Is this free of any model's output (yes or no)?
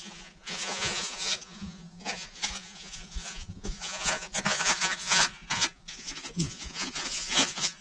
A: no